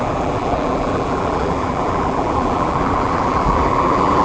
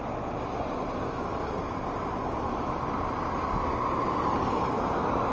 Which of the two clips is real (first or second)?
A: second